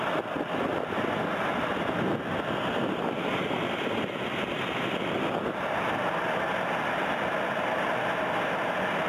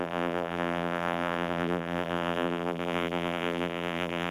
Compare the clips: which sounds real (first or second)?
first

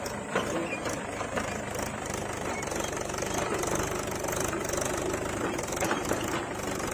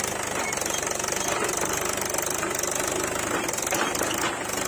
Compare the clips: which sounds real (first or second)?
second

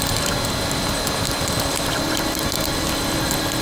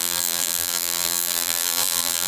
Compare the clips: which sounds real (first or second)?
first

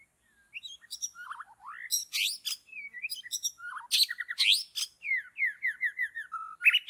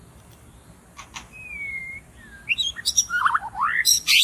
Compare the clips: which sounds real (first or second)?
first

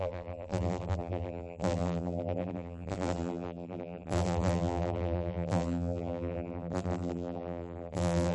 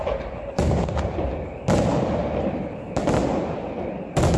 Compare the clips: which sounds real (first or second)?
second